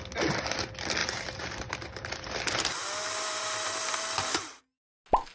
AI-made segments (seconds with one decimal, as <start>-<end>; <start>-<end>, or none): 1.0-2.2; 3.0-4.6